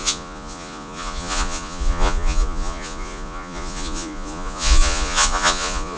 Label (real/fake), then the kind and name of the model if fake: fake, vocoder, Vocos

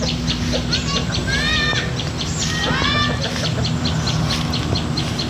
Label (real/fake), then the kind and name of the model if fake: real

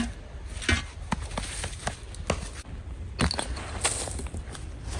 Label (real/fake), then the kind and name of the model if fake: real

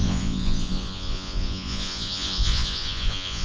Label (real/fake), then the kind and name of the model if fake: fake, vocoder, Vocos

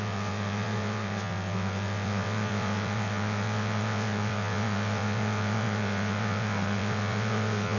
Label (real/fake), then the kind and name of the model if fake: fake, vocoder, WaveNeXt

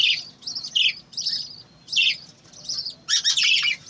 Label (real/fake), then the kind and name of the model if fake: real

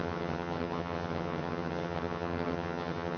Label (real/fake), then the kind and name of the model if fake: fake, vocoder, HiFi-GAN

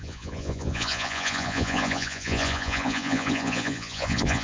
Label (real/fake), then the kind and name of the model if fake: fake, vocoder, Vocos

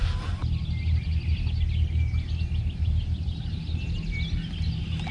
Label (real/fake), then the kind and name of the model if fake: real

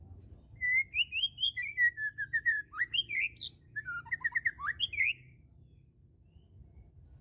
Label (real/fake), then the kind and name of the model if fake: real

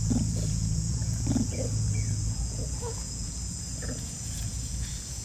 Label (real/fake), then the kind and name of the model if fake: fake, vocoder, Vocos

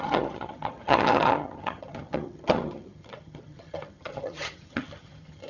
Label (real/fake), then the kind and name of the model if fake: fake, vocoder, HiFi-GAN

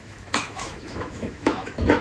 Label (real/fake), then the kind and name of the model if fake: fake, autoencoder, DAC-VAE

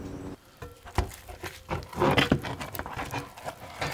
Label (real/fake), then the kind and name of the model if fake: real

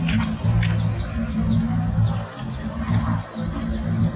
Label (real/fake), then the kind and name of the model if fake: real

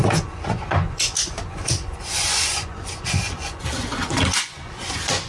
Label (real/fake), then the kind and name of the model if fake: fake, vocoder, Vocos